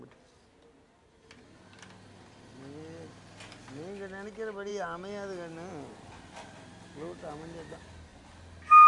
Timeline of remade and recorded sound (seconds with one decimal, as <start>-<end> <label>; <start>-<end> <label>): 0.0-8.9 recorded